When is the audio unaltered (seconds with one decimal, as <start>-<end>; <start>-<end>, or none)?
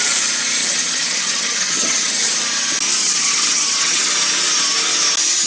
0.0-0.6; 2.3-3.0; 4.1-5.5